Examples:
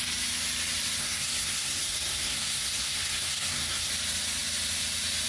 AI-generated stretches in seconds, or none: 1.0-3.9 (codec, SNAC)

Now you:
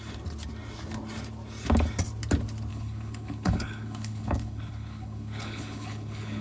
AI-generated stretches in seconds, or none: 2.7-6.4 (codec, HILCodec)

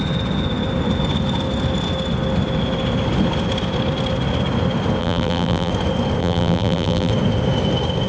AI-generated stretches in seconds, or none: 5.0-5.7 (vocoder, BigVGAN v2); 6.2-7.1

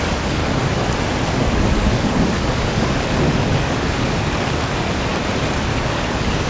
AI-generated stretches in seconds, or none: 0.0-0.4 (codec, DAC); 1.3-5.1; 5.6-6.5

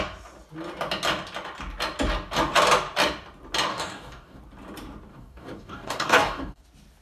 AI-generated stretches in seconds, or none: 3.7-4.4 (codec, DAC); 5.1-6.6